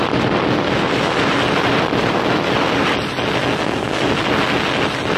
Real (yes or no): yes